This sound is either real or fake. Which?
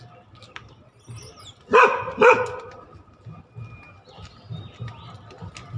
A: real